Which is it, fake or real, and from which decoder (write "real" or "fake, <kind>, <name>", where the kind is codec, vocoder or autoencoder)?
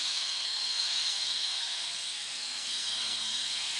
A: fake, codec, SNAC